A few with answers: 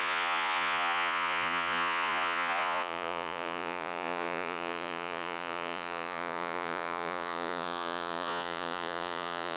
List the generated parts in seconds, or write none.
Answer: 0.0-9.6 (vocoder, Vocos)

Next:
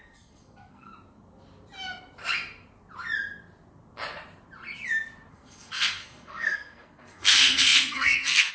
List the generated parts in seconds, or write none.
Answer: 0.0-0.9 (codec, SNAC); 5.3-8.5

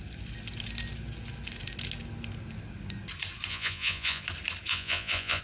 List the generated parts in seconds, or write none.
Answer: 3.5-4.2 (vocoder, Vocos); 4.7-5.4

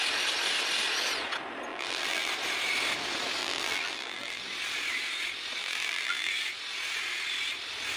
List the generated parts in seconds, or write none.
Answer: 1.7-2.3 (vocoder, BigVGAN v2); 3.4-4.4; 5.6-6.3

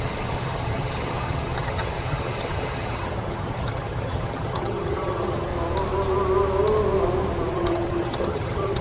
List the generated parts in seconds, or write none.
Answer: 0.0-5.5 (vocoder, HiFi-GAN); 7.5-8.8

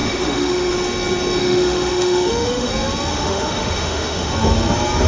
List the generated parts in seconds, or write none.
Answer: 0.0-0.7 (autoencoder, DAC-VAE); 1.4-2.7; 3.1-4.3

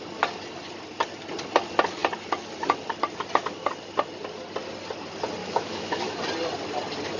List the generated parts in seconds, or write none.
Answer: 5.4-6.2 (autoencoder, DAC-VAE)

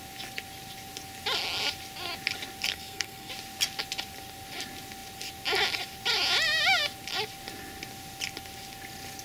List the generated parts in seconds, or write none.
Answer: 2.7-3.3 (codec, SNAC)